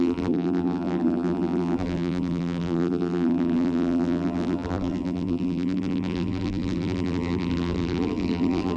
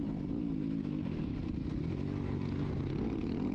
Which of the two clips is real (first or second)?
second